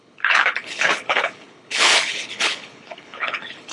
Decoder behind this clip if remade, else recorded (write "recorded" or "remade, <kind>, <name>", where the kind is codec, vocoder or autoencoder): remade, codec, HILCodec